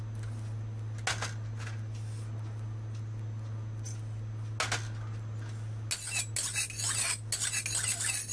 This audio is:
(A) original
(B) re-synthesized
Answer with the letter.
A